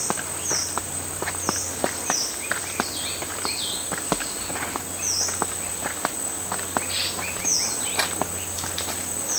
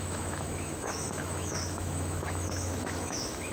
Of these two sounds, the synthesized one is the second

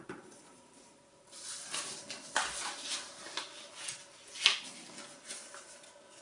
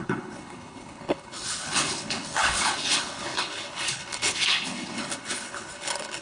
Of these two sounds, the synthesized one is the second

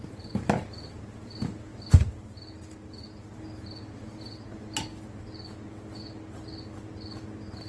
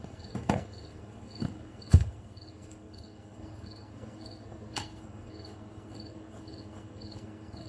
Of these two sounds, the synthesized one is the second